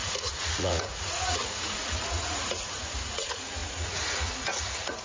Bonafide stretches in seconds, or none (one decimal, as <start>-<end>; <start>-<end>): none